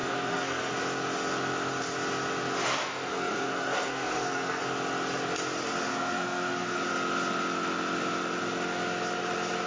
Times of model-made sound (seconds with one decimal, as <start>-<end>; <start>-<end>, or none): 0.0-0.7; 2.8-4.6; 5.9-6.8